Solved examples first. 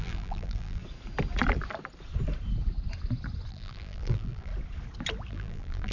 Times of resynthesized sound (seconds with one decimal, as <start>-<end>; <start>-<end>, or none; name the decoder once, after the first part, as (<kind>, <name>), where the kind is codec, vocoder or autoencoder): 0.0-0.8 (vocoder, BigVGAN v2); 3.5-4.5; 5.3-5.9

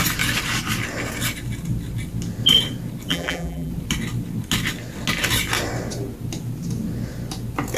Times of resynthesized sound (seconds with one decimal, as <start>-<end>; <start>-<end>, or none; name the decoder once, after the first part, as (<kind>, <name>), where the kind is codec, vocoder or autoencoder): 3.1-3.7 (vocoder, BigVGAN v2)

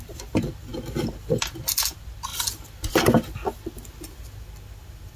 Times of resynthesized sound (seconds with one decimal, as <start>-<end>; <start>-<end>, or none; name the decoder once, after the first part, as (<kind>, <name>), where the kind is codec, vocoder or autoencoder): none

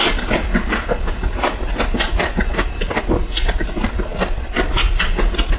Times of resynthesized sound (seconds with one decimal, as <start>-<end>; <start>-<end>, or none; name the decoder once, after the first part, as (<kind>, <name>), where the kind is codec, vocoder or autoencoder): 4.1-4.7 (vocoder, BigVGAN v2)

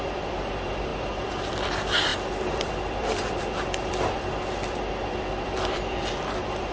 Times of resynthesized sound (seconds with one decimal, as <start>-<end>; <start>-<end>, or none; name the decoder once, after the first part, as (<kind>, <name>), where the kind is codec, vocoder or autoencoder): 0.0-6.7 (vocoder, BigVGAN v2)

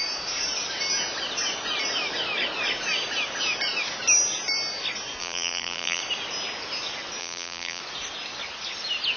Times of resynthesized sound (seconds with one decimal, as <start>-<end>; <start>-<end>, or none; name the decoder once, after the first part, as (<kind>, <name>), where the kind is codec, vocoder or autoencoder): 5.2-6.0 (vocoder, BigVGAN v2); 7.2-7.8